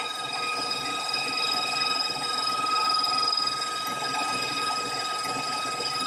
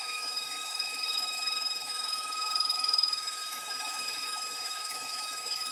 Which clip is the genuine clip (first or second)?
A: first